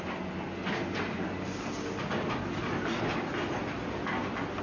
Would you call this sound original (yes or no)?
yes